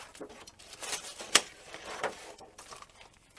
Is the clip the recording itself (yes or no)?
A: no